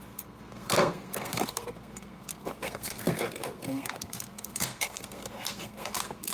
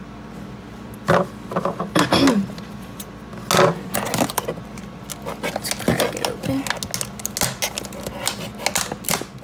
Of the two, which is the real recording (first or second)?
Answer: second